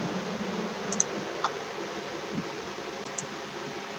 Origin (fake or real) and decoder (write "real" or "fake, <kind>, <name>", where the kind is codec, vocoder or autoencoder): real